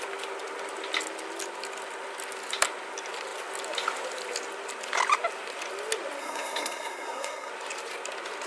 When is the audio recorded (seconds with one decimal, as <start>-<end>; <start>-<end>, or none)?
0.0-6.2; 7.5-8.5